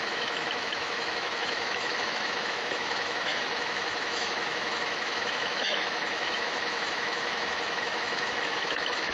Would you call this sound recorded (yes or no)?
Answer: no